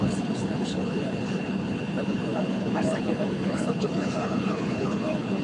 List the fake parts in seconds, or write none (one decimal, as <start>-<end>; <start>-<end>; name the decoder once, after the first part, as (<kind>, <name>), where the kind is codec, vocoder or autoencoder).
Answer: 0.0-5.4 (codec, HILCodec)